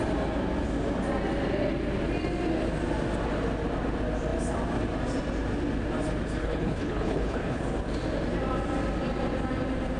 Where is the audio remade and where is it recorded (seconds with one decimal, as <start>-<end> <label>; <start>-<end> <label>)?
0.0-6.4 recorded; 6.4-7.6 remade; 7.6-10.0 recorded